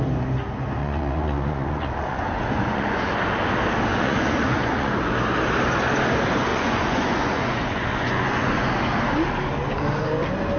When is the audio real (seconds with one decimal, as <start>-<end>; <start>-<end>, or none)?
0.0-0.8; 3.1-3.9; 5.0-6.5; 8.7-10.6